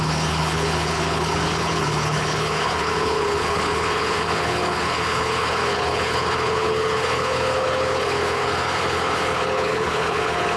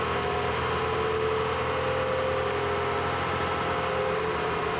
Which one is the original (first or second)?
second